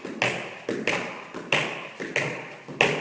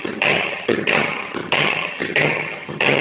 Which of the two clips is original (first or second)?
first